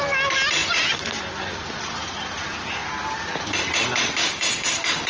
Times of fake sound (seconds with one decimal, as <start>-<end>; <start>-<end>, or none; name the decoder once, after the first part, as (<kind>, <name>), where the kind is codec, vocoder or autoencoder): 4.2-5.1 (codec, DAC)